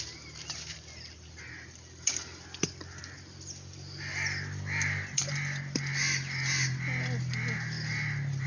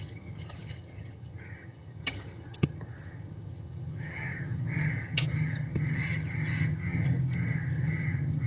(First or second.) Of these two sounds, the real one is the first